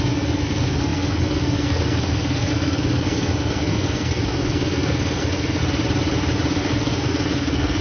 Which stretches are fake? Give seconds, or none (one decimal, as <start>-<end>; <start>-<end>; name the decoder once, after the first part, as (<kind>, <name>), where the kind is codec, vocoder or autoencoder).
0.0-5.6 (codec, SNAC); 6.6-7.8